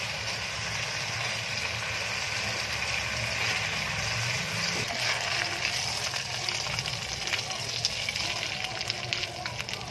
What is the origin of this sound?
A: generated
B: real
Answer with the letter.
B